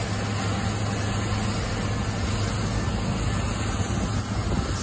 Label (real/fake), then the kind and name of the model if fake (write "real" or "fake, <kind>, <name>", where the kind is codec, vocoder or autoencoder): real